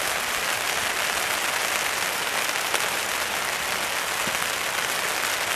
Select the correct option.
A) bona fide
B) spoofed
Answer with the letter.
A